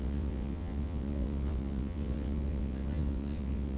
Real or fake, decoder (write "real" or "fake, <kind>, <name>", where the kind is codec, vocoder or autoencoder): fake, vocoder, WaveNeXt